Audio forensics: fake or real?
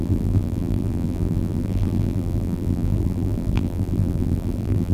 fake